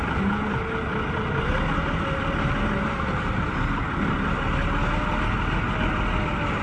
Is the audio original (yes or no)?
yes